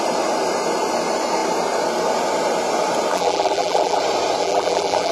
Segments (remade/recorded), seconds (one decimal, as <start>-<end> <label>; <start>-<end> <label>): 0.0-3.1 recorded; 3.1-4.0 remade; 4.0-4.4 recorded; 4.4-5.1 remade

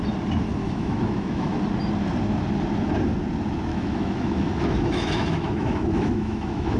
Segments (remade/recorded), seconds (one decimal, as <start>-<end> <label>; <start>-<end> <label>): 0.0-0.6 recorded; 0.6-1.6 remade; 1.6-3.7 recorded; 3.7-6.8 remade

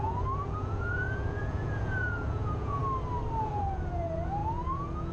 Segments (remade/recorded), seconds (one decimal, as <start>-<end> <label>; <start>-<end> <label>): 0.0-2.8 remade; 2.8-3.4 recorded; 3.4-5.1 remade

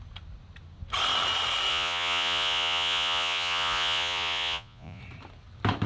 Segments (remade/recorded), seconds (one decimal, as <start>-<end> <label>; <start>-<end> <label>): 0.0-1.7 recorded; 1.7-5.0 remade; 5.0-5.9 recorded